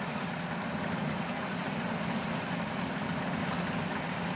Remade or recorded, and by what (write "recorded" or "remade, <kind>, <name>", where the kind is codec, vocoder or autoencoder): recorded